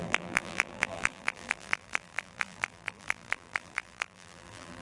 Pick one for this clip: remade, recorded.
remade